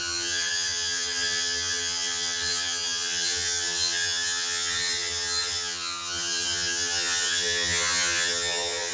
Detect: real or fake fake